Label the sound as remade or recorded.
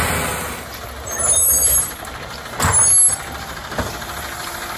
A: recorded